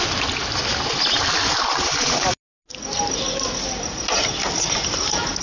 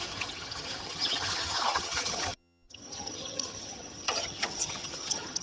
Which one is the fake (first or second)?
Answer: second